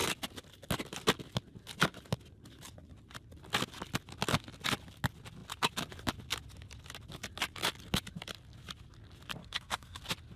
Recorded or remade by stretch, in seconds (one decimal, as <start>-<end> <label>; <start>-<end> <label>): 0.0-9.4 recorded; 9.4-10.0 remade; 10.0-10.4 recorded